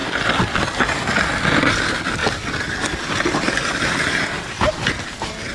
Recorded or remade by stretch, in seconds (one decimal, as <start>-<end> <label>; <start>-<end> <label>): 0.0-5.5 recorded